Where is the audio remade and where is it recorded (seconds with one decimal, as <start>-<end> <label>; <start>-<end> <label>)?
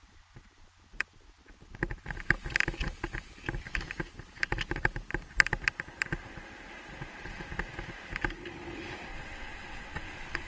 0.0-9.1 recorded; 9.1-10.5 remade